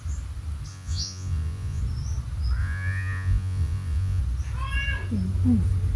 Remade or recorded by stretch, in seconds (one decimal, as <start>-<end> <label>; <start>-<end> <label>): 0.0-0.7 recorded; 0.7-1.8 remade; 1.8-2.6 recorded; 2.6-4.2 remade; 4.2-6.0 recorded